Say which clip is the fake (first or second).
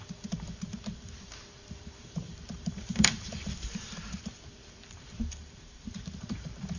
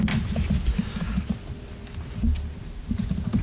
first